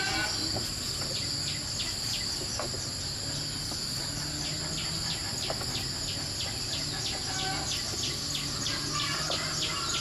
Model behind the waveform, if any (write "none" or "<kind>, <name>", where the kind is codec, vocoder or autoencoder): none